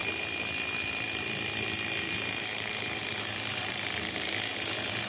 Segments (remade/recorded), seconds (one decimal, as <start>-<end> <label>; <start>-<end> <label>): 0.0-2.0 recorded; 2.0-5.1 remade